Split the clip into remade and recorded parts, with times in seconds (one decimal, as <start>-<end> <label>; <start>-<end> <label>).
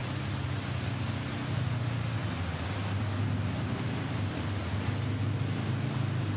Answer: 0.0-6.4 recorded